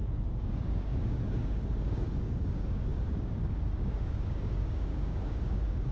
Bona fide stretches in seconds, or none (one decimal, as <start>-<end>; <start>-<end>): none